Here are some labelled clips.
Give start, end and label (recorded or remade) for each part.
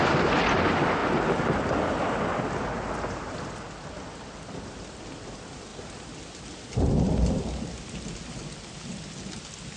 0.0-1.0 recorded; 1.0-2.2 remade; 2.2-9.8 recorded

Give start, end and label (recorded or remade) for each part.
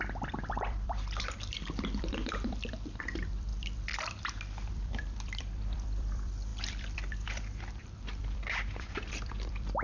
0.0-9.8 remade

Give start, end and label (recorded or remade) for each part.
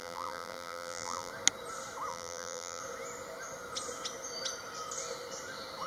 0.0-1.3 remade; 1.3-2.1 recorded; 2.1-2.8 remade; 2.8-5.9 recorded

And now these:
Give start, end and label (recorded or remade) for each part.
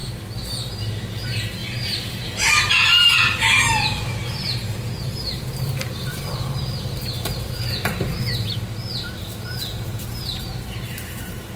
0.0-0.5 recorded; 0.5-8.1 remade; 8.1-9.0 recorded; 9.0-11.6 remade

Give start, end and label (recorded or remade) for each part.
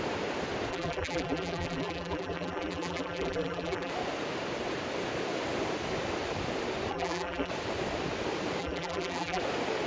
0.0-0.7 recorded; 0.7-3.9 remade; 3.9-6.9 recorded; 6.9-7.5 remade; 7.5-8.6 recorded; 8.6-9.4 remade; 9.4-9.9 recorded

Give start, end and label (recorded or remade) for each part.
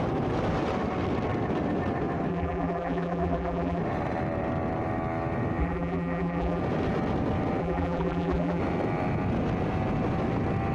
0.0-2.3 recorded; 2.3-3.8 remade; 3.8-5.6 recorded; 5.6-6.6 remade; 6.6-7.6 recorded; 7.6-8.6 remade; 8.6-10.7 recorded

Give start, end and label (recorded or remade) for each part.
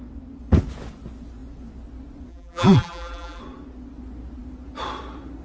0.0-2.3 recorded; 2.3-3.4 remade; 3.4-5.4 recorded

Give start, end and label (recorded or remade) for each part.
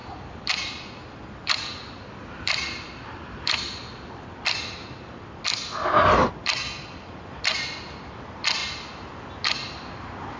0.0-4.4 remade; 4.4-10.4 recorded